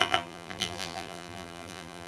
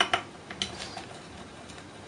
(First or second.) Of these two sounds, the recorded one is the second